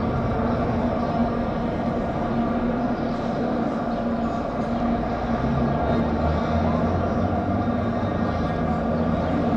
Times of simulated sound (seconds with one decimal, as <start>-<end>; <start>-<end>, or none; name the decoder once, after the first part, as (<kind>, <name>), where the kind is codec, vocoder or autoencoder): none